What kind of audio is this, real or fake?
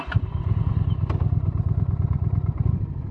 fake